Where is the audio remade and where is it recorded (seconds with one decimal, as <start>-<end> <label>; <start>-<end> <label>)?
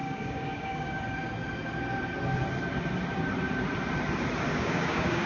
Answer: 0.0-1.0 remade; 1.0-4.5 recorded; 4.5-5.3 remade